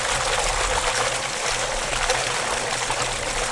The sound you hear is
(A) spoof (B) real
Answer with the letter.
B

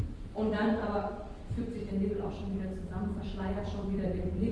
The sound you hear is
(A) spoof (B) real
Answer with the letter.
A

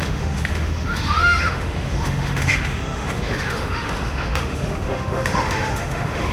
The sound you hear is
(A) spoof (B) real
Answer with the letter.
A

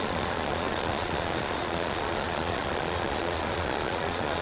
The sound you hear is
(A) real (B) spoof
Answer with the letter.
B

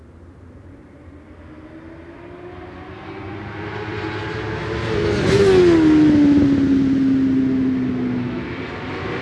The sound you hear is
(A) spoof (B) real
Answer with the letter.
B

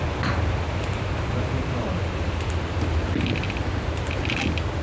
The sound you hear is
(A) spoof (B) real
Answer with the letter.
B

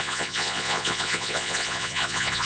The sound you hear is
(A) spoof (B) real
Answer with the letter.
A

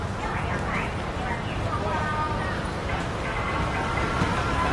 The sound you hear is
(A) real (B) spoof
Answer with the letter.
A